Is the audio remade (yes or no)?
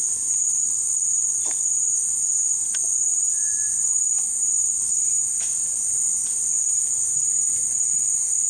no